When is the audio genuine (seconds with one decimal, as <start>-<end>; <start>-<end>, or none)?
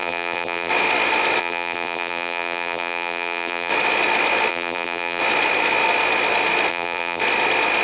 0.7-1.4; 3.7-4.5; 5.2-6.7; 7.2-7.8